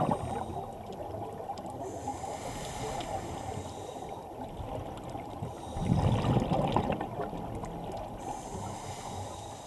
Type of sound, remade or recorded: recorded